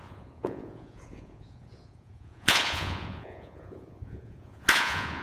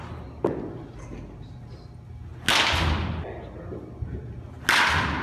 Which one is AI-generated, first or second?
first